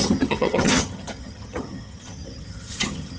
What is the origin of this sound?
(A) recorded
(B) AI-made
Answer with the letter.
B